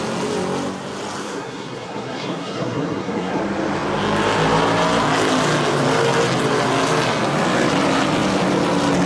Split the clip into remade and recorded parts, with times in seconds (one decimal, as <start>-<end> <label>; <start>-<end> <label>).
0.0-1.2 recorded; 1.2-3.4 remade; 3.4-9.1 recorded